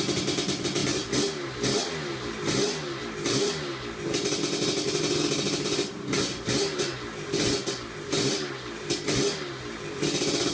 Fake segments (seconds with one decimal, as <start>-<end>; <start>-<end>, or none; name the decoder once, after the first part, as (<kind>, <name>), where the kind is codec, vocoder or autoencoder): none

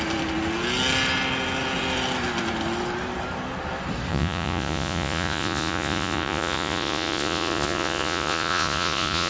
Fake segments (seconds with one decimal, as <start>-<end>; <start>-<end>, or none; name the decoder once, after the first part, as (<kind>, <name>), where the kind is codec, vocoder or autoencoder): 4.1-9.3 (vocoder, Vocos)

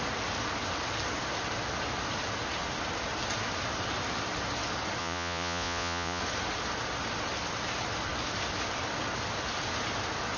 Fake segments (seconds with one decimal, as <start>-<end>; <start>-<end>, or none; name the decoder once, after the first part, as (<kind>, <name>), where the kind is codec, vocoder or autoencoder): 5.0-6.2 (vocoder, Vocos)

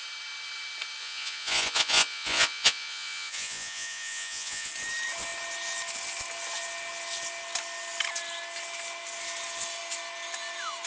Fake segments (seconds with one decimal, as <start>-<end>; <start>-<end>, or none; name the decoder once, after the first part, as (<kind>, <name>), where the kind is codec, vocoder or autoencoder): 1.0-4.7 (vocoder, Vocos)

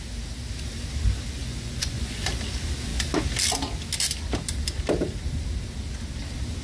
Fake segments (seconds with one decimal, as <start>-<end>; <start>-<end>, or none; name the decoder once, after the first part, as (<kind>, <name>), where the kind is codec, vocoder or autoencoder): 1.4-2.3 (vocoder, Vocos)

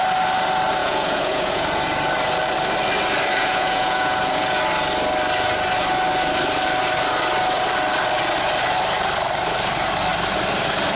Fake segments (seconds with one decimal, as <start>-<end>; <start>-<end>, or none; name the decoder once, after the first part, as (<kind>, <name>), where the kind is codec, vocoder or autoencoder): 0.8-1.8 (vocoder, Vocos); 3.4-4.6

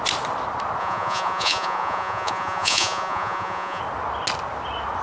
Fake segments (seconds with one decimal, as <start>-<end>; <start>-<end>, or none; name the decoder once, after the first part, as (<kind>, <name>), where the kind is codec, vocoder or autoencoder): 0.8-3.8 (vocoder, Vocos)